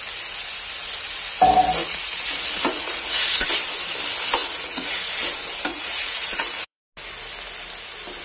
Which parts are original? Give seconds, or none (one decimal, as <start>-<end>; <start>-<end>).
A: 0.0-1.8; 3.5-4.4; 5.1-5.7; 6.8-8.2

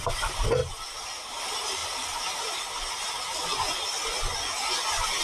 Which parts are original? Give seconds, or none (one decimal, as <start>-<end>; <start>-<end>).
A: 0.0-5.2

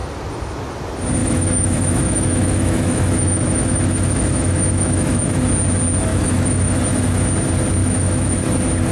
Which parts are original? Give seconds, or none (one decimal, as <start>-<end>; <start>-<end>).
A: 0.0-1.2; 5.3-6.1; 6.8-7.8; 8.4-8.9

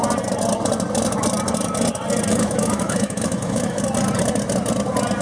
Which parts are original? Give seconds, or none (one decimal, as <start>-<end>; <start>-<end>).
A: 0.0-2.3; 3.8-5.2

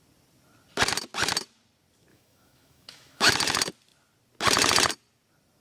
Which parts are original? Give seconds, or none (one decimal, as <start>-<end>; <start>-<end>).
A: 0.0-2.1; 3.3-5.6

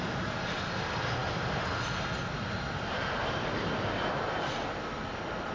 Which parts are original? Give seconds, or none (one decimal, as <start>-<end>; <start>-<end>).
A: 0.0-5.5

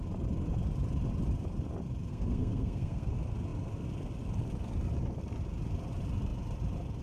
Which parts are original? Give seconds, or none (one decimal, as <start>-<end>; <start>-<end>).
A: 0.0-2.1; 3.1-7.0

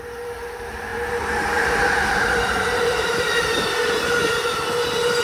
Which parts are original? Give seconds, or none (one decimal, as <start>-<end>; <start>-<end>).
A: 0.0-0.9; 3.4-5.2